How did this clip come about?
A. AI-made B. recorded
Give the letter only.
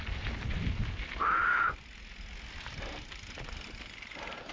B